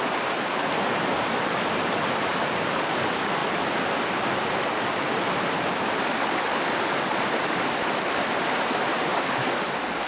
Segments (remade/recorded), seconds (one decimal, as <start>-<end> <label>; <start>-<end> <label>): 0.0-3.4 remade; 3.4-8.6 recorded; 8.6-9.1 remade; 9.1-10.1 recorded